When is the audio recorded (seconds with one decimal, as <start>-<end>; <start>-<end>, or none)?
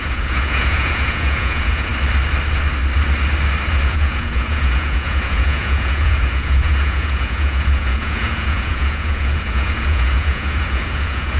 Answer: 1.9-3.7